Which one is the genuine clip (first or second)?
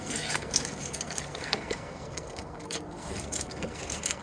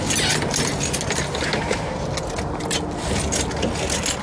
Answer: second